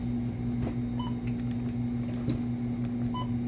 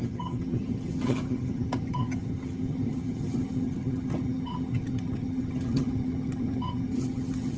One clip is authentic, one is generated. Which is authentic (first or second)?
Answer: first